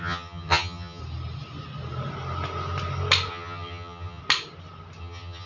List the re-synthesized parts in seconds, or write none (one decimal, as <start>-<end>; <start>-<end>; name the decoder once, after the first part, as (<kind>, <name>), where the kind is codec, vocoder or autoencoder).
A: 0.0-1.0 (vocoder, HiFi-GAN); 3.3-4.2; 5.0-5.5